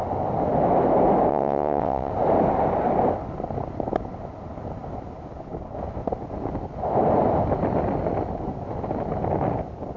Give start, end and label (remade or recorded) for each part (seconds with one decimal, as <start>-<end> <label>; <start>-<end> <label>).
0.0-1.3 recorded; 1.3-2.1 remade; 2.1-10.0 recorded